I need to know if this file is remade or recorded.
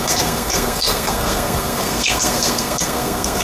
remade